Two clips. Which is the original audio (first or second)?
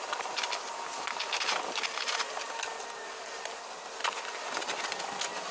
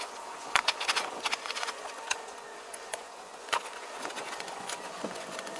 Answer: first